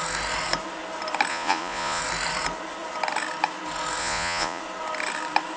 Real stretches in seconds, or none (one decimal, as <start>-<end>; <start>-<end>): 0.0-1.3; 2.0-4.0; 4.6-5.6